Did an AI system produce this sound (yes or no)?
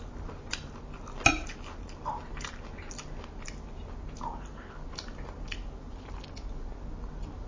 no